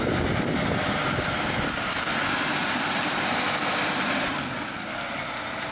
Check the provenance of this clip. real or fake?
real